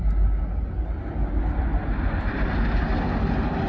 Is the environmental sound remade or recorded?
recorded